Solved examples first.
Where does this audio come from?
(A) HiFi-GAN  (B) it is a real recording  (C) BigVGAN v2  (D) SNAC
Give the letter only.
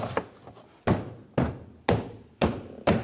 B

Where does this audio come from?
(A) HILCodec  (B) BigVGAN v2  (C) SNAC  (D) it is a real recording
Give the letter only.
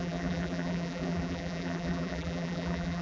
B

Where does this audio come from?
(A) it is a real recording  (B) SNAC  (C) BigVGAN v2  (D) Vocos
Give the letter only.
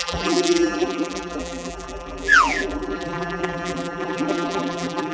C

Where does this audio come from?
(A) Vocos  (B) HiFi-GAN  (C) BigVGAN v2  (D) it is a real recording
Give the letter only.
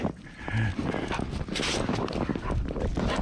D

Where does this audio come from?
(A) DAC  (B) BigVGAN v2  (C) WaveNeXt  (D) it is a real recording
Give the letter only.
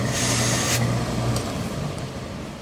D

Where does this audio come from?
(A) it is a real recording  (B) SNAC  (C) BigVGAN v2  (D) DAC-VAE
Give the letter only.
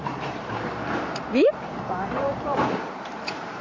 C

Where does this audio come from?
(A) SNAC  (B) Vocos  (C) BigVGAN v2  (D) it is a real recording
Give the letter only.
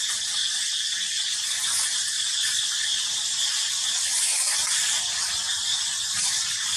D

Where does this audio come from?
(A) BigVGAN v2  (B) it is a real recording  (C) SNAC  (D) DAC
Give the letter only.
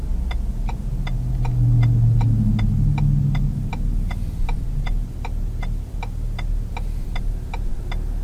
B